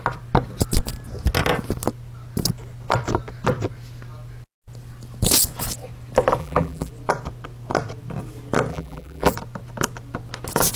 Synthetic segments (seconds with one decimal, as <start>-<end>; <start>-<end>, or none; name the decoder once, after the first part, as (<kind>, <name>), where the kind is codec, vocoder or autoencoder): 6.4-6.9 (vocoder, BigVGAN v2); 8.7-9.3